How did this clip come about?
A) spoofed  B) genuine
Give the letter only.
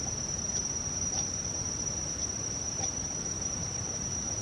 A